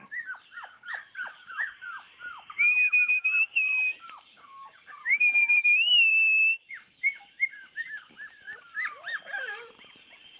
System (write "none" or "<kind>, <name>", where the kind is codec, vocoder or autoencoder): vocoder, BigVGAN v2